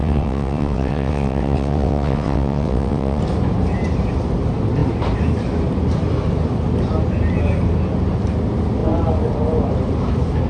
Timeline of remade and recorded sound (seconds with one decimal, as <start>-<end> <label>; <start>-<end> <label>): 0.0-3.2 remade; 3.2-10.5 recorded